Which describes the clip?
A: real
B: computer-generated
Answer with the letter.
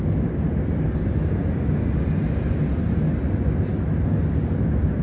A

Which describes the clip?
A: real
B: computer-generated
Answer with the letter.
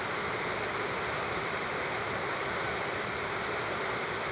A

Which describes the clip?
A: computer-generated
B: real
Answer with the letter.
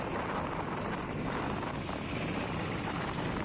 B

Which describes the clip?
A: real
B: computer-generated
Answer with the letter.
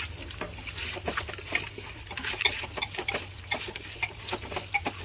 A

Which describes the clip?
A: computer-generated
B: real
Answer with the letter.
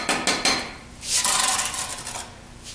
B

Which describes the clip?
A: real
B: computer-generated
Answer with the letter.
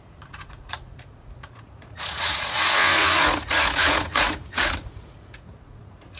B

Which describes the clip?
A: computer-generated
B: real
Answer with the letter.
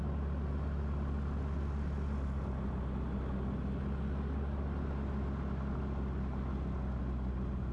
B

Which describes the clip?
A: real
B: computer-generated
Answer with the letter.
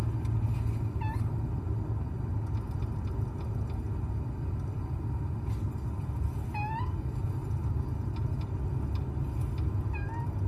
A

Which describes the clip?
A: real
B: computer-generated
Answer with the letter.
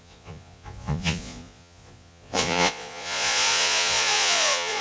B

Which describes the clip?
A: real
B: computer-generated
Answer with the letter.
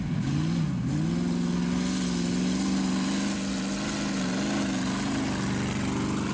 A